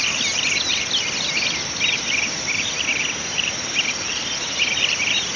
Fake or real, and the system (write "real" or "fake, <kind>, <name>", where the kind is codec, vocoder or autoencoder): real